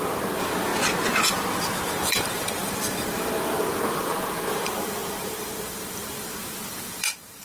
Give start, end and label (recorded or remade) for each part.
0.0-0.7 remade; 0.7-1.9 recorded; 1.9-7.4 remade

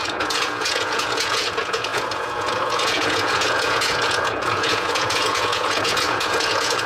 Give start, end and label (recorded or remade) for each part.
0.0-6.9 remade

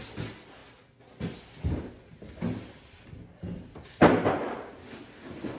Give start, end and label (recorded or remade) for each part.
0.0-5.6 recorded